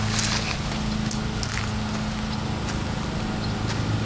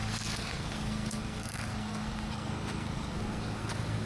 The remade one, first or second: second